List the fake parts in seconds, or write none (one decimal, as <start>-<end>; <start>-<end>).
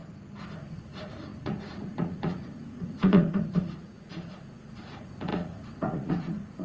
0.7-6.6